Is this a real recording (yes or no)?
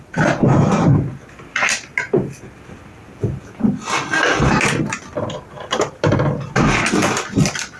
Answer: no